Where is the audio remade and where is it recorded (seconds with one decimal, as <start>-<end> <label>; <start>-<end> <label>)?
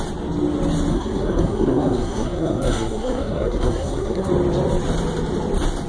0.0-0.9 recorded; 0.9-4.3 remade; 4.3-5.9 recorded